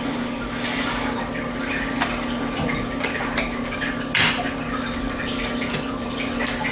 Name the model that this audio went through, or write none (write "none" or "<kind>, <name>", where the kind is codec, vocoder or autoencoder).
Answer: none